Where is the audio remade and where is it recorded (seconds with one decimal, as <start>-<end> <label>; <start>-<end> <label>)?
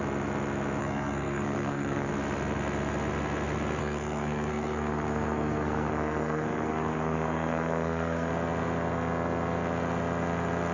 0.0-0.8 recorded; 0.8-2.1 remade; 2.1-3.8 recorded; 3.8-8.3 remade; 8.3-10.7 recorded